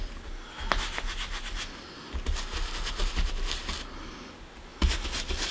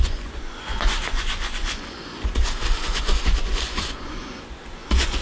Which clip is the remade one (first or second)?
second